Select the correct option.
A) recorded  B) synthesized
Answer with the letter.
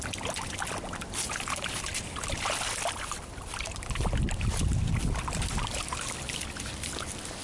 A